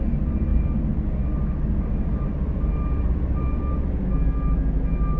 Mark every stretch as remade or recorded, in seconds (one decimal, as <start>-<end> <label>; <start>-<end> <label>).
0.0-0.5 recorded; 0.5-3.6 remade; 3.6-5.2 recorded